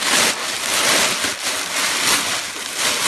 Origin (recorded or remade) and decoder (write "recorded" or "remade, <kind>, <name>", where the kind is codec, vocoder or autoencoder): recorded